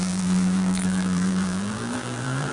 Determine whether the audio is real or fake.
fake